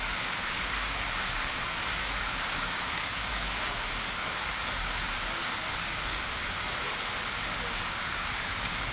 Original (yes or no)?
no